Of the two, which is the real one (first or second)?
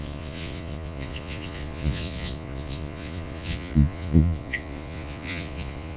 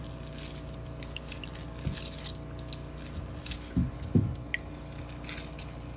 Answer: second